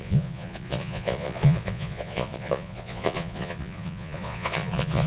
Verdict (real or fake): fake